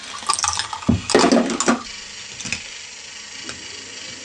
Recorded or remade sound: recorded